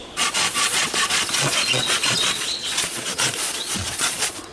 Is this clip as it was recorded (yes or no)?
no